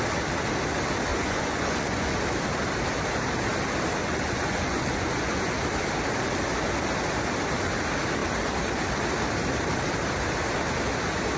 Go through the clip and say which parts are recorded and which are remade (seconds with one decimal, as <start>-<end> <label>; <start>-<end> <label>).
0.0-1.1 recorded; 1.1-2.2 remade; 2.2-4.0 recorded; 4.0-5.5 remade; 5.5-11.4 recorded